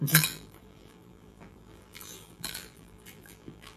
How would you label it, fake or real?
fake